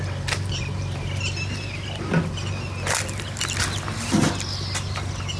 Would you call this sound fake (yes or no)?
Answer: no